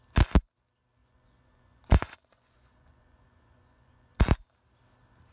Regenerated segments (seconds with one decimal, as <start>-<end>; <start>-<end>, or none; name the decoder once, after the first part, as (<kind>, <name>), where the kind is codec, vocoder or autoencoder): 1.0-4.2 (vocoder, Vocos)